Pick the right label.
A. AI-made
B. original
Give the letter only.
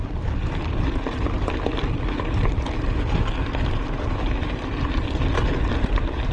B